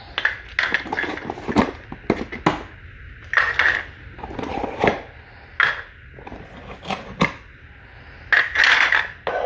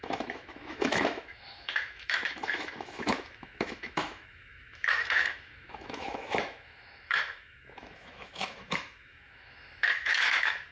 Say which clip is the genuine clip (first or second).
first